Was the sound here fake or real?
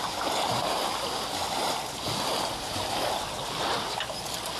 real